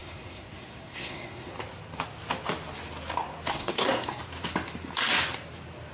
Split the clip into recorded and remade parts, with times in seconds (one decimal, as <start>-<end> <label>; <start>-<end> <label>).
0.0-1.5 remade; 1.5-3.5 recorded; 3.5-4.2 remade; 4.2-5.9 recorded